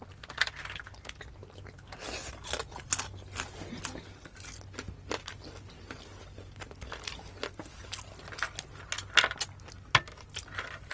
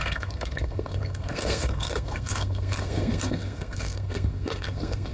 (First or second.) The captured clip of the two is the first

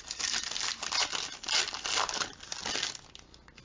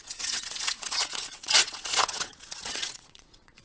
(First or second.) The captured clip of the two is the first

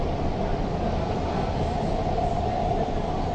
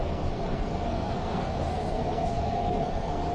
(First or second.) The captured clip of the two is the first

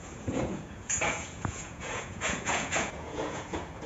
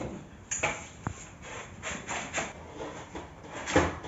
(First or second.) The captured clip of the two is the second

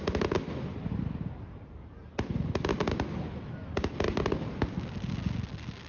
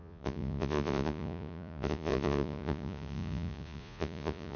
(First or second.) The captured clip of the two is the first